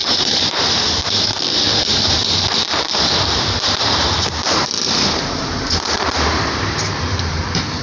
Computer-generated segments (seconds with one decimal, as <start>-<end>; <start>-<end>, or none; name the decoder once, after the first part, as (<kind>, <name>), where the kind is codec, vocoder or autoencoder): 0.0-7.8 (vocoder, BigVGAN v2)